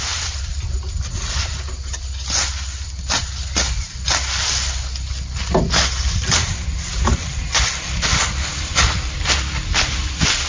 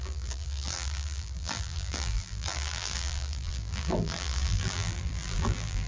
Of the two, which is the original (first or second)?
first